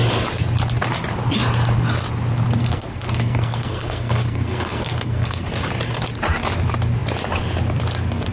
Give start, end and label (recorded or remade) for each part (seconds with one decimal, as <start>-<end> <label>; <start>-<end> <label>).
0.0-2.6 recorded; 2.6-5.5 remade; 5.5-8.3 recorded